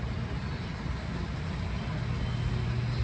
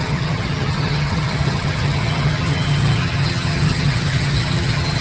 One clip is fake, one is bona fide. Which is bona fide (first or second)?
first